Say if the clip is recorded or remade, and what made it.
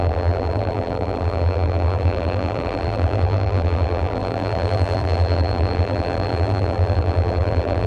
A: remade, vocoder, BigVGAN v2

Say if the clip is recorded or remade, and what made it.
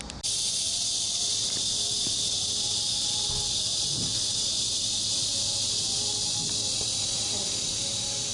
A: recorded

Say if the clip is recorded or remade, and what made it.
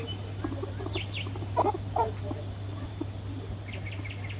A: recorded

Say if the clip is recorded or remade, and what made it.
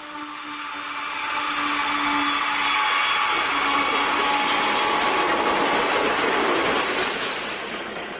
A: recorded